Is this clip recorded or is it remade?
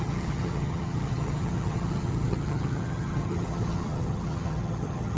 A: remade